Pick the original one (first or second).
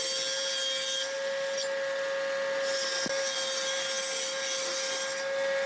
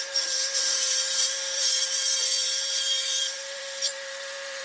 first